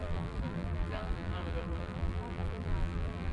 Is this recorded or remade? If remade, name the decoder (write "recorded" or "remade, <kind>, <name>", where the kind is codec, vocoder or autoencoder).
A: remade, vocoder, BigVGAN v2